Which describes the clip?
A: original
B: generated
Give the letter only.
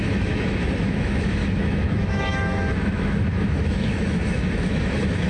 B